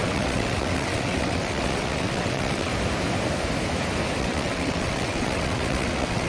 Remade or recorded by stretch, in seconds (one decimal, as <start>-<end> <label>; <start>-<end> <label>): 0.0-2.7 remade; 2.7-4.2 recorded; 4.2-6.3 remade